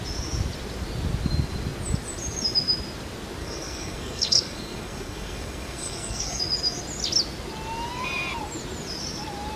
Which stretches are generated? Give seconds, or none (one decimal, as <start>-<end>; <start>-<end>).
3.4-6.4